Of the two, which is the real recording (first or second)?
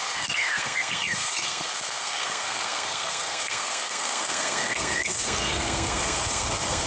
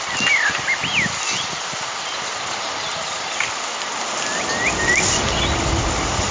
second